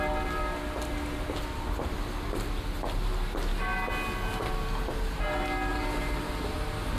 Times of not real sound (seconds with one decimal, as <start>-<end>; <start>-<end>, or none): 5.7-6.3